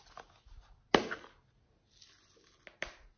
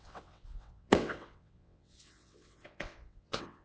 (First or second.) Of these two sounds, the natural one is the first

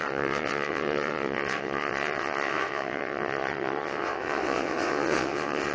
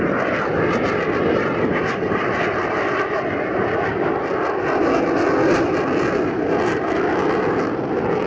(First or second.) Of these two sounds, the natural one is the second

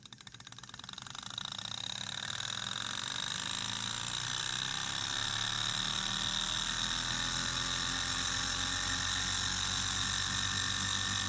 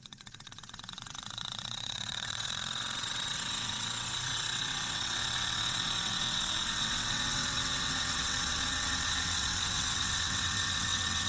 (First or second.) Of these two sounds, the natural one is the first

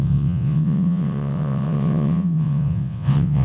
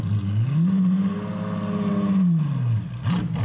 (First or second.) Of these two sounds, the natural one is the second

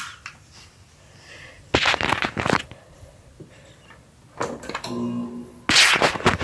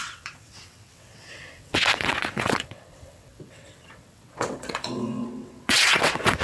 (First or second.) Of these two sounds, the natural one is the first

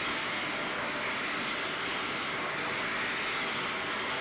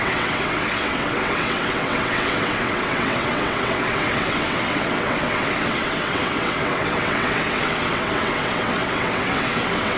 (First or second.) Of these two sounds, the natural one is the first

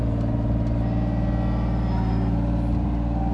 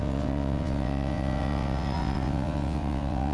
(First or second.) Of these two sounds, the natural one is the first